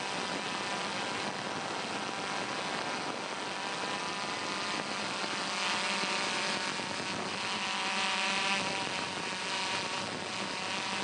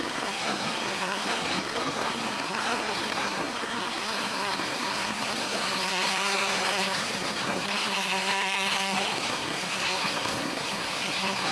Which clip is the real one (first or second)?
first